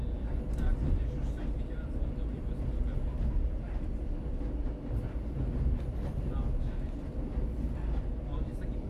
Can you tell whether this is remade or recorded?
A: recorded